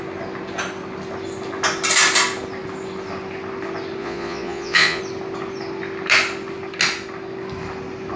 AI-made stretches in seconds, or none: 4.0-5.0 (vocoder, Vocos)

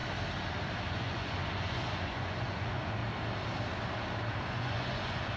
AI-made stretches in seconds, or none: 0.9-3.0 (vocoder, Vocos); 4.4-5.4

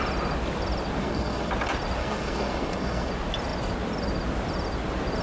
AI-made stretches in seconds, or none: 1.0-1.5 (codec, SNAC); 2.0-3.1

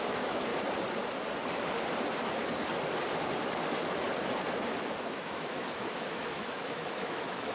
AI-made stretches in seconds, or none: 0.0-0.5 (autoencoder, DAC-VAE); 5.0-7.5

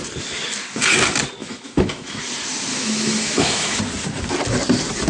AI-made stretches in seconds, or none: 1.4-2.2 (autoencoder, DAC-VAE); 2.7-3.8

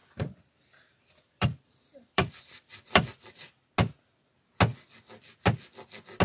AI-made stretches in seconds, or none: 0.0-3.7 (vocoder, BigVGAN v2)

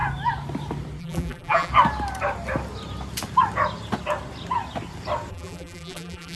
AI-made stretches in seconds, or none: 1.0-1.7 (vocoder, BigVGAN v2); 5.3-6.4

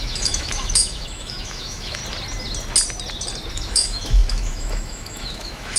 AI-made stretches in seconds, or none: 0.0-2.0 (autoencoder, DAC-VAE); 3.5-5.8